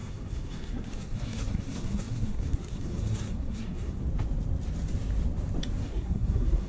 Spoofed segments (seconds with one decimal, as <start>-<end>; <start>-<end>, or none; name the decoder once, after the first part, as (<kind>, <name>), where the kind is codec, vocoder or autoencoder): 0.0-4.0 (codec, SNAC); 5.8-6.7